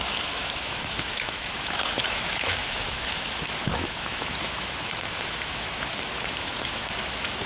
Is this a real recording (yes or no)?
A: no